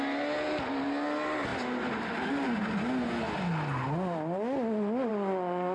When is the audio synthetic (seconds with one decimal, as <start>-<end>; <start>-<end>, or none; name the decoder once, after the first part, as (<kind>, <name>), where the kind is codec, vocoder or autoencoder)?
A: none